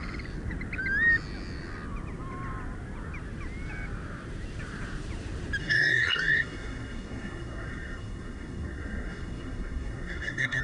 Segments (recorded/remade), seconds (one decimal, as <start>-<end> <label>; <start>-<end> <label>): 0.0-5.6 recorded; 5.6-10.6 remade

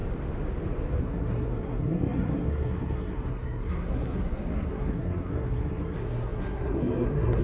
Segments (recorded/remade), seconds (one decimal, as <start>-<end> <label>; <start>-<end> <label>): 0.0-1.0 recorded; 1.0-7.4 remade

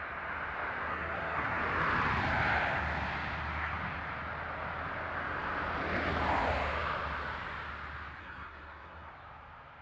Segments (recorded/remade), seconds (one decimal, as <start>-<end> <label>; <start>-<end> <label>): 0.0-0.9 recorded; 0.9-1.6 remade; 1.6-8.2 recorded; 8.2-9.1 remade; 9.1-9.8 recorded

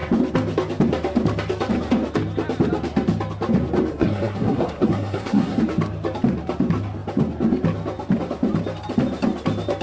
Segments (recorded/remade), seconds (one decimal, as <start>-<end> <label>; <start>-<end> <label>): 0.0-3.9 recorded; 3.9-5.6 remade; 5.6-9.8 recorded

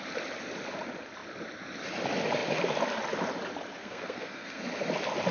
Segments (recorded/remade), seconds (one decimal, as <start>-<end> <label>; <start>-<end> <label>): 0.0-3.8 recorded; 3.8-4.6 remade; 4.6-5.3 recorded

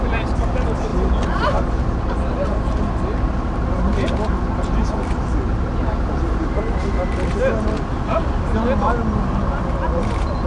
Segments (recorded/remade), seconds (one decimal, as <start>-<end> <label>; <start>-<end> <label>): 0.0-10.5 recorded

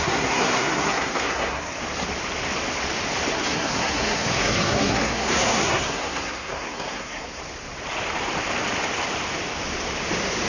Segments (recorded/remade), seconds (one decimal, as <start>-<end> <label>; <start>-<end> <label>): 0.0-1.8 remade; 1.8-3.3 recorded; 3.3-7.4 remade; 7.4-10.5 recorded

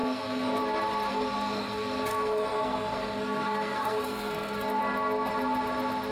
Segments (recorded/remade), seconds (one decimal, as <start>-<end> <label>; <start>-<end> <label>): 0.0-0.6 remade; 0.6-1.1 recorded; 1.1-4.8 remade; 4.8-6.1 recorded